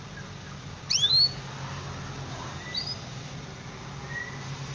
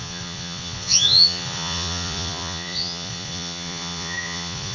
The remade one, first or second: second